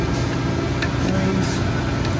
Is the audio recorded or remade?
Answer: recorded